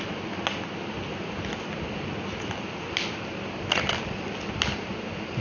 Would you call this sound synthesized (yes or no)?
no